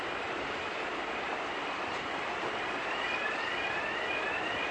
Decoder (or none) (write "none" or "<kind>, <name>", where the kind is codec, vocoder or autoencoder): none